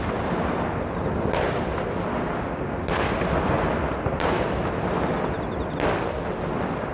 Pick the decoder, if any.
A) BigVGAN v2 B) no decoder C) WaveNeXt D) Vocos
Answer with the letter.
B